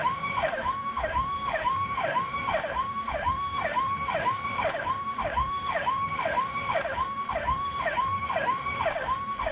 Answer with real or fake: fake